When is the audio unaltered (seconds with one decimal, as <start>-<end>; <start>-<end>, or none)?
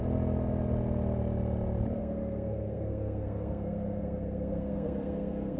0.0-2.0